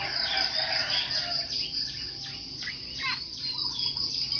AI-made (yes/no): no